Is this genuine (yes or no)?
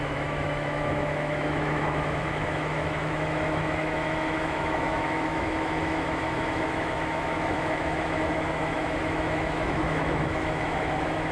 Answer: no